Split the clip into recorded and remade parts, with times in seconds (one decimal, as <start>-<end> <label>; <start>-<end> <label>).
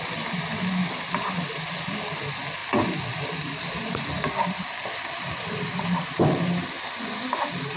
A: 0.0-0.8 recorded; 0.8-1.8 remade; 1.8-2.6 recorded; 2.6-6.8 remade; 6.8-7.8 recorded